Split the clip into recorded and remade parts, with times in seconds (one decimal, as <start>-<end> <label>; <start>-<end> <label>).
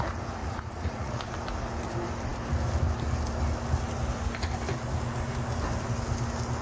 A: 0.0-0.4 recorded; 0.4-1.3 remade; 1.3-6.6 recorded